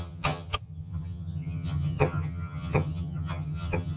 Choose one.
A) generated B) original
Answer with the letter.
A